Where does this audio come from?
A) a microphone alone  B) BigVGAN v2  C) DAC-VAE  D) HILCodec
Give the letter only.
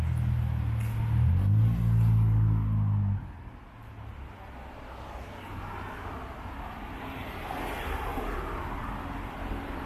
A